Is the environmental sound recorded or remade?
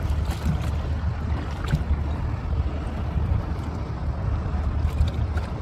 recorded